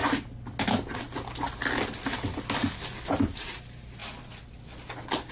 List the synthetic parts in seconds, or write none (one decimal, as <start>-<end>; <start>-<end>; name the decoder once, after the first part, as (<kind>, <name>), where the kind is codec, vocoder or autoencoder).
none